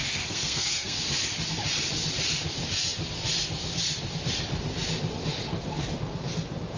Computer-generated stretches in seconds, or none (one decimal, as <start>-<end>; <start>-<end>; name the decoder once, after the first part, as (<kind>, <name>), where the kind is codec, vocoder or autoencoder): 0.0-1.0 (codec, SNAC)